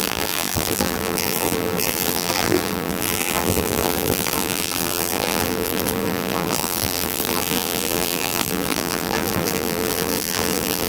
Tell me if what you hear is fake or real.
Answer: fake